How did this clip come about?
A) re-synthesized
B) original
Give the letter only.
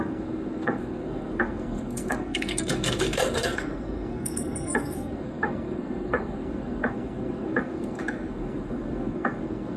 A